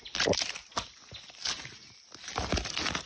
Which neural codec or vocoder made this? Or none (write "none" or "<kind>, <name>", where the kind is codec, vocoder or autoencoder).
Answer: none